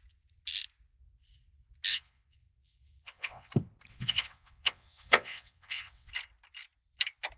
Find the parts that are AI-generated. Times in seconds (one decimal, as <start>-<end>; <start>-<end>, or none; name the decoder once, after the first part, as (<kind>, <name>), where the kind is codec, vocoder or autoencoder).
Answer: 1.9-3.5 (vocoder, WaveNeXt); 3.9-6.1